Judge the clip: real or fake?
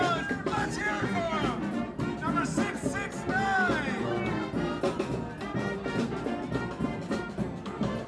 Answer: real